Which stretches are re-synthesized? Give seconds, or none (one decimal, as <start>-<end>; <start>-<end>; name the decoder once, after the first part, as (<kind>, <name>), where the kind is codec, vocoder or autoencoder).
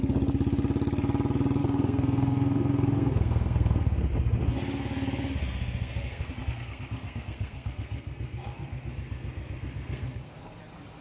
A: 1.6-4.1 (codec, SNAC); 5.4-10.6